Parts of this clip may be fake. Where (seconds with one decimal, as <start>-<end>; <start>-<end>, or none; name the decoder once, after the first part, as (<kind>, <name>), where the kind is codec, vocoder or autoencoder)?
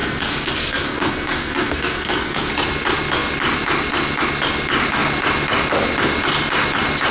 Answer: 0.0-2.5 (codec, SNAC)